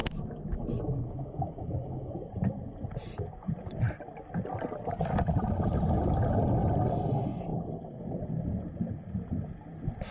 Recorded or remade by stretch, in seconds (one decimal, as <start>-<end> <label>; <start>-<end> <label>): 0.0-2.3 remade; 2.3-10.1 recorded